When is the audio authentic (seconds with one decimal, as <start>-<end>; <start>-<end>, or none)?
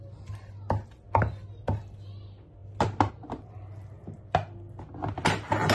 0.0-5.7